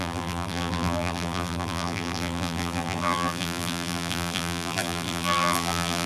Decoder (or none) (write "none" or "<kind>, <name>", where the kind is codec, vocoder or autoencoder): vocoder, BigVGAN v2